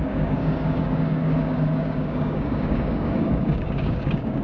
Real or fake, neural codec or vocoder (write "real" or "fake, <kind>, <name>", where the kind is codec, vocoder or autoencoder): fake, codec, DAC